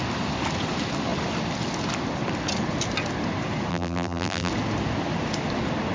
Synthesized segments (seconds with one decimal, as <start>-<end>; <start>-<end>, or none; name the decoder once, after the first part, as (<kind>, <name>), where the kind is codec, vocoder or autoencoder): 3.7-4.5 (vocoder, BigVGAN v2)